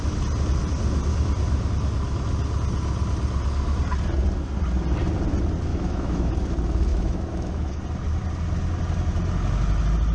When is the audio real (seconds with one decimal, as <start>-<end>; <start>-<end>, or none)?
0.0-5.7; 6.3-6.9; 7.8-10.1

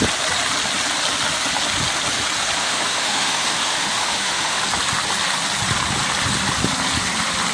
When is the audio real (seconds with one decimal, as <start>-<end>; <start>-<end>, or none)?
0.0-2.6; 4.6-7.5

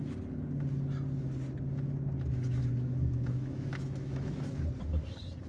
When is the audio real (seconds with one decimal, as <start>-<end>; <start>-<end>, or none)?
0.0-2.6; 4.6-5.5

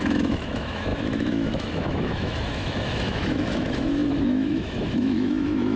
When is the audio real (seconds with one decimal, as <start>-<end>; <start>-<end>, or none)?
none

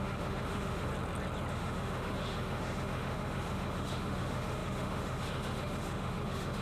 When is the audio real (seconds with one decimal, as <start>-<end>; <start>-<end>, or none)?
0.9-1.5

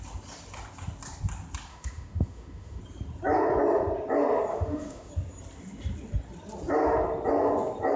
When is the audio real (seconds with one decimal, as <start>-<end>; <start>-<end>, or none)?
0.0-1.7; 2.8-4.5; 5.1-8.0

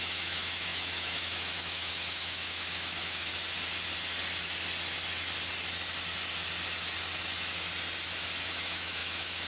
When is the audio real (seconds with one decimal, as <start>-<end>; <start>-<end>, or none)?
3.3-8.4

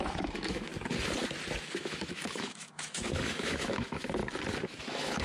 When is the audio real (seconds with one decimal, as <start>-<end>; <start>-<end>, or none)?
0.7-1.7; 4.2-4.8